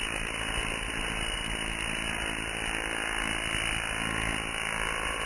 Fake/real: real